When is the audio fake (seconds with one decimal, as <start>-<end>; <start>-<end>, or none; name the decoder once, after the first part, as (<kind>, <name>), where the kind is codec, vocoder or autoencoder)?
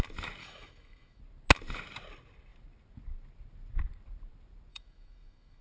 0.4-1.2 (autoencoder, DAC-VAE); 4.7-5.6